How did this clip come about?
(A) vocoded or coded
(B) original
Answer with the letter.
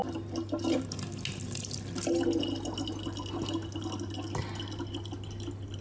B